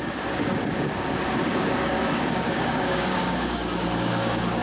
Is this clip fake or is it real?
fake